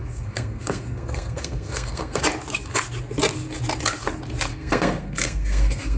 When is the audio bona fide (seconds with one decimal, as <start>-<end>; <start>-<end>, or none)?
2.2-4.5

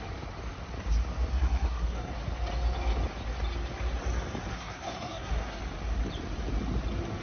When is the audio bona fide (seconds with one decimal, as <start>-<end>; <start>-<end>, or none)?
0.0-1.3; 2.1-4.5; 5.6-7.2

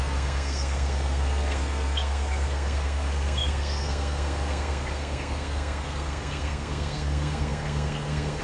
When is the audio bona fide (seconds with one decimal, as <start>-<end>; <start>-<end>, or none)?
none

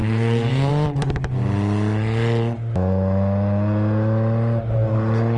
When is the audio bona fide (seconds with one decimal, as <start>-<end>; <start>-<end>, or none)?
0.7-5.4

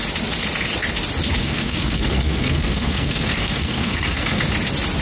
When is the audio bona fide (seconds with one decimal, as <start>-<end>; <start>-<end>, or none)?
0.0-1.4; 4.4-5.0

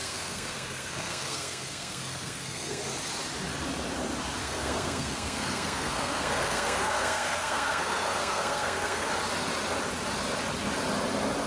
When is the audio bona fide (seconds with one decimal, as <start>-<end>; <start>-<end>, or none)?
2.8-4.4; 9.1-11.5

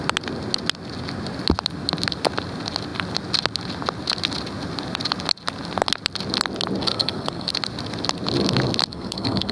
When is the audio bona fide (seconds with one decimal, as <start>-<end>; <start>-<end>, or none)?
0.0-6.8; 7.5-8.9